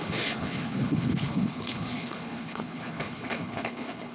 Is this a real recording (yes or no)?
no